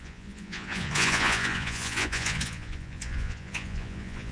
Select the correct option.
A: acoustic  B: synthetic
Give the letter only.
B